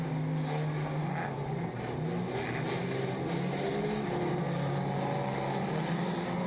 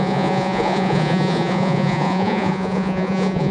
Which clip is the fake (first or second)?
second